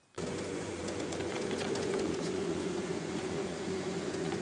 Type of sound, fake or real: fake